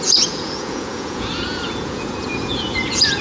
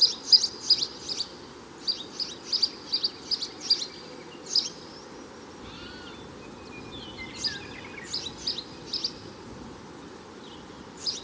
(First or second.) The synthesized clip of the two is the first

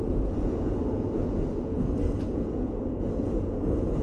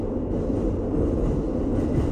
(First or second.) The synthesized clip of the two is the first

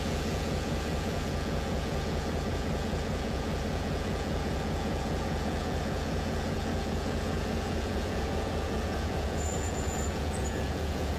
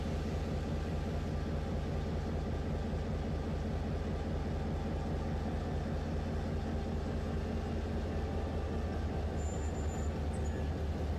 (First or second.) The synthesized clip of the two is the first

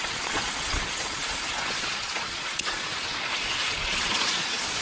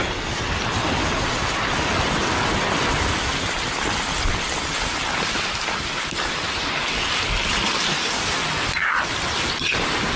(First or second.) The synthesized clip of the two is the first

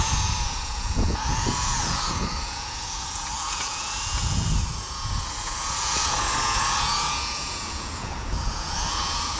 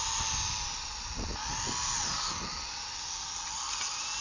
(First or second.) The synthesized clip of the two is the first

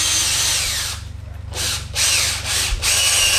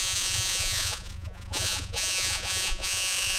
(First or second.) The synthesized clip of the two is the second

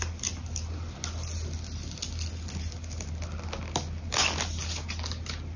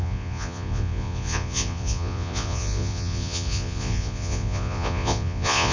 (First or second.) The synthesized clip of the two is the second